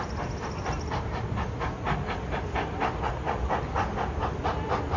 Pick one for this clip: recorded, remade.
recorded